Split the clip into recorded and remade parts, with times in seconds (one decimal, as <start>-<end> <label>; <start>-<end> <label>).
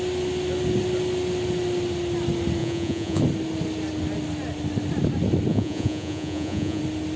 0.0-2.6 recorded; 2.6-3.2 remade; 3.2-5.5 recorded; 5.5-6.8 remade; 6.8-7.2 recorded